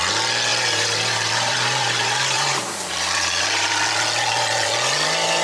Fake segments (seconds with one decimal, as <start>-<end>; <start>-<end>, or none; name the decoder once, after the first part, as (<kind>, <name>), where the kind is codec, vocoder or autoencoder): 0.5-3.7 (vocoder, BigVGAN v2)